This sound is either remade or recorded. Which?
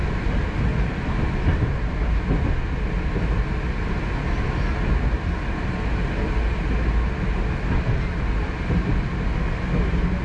recorded